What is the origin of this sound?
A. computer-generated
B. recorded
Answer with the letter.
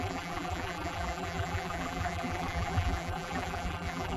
A